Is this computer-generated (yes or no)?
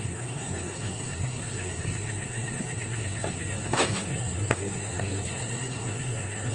yes